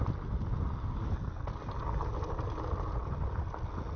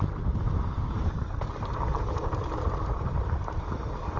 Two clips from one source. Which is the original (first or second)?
first